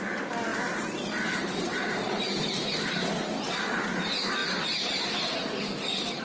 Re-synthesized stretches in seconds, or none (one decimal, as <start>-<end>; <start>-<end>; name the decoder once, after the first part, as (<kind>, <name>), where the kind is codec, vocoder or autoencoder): 0.5-3.0 (vocoder, BigVGAN v2); 4.4-6.2